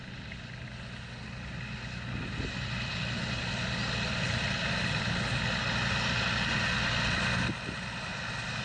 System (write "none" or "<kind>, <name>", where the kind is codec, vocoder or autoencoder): none